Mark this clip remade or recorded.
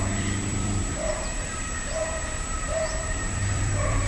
remade